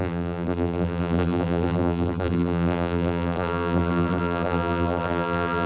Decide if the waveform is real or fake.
fake